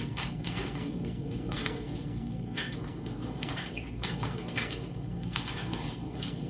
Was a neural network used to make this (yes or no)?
yes